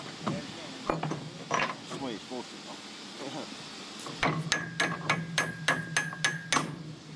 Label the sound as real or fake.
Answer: real